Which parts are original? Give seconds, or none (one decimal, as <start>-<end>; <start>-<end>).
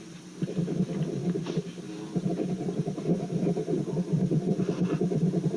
0.0-1.2; 1.8-5.6